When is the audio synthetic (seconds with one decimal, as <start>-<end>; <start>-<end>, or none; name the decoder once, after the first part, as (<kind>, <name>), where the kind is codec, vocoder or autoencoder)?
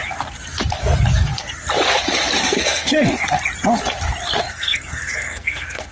2.4-3.2 (codec, SNAC); 4.5-5.9